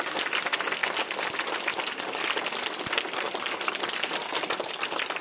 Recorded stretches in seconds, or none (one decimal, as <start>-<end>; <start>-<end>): 0.0-5.2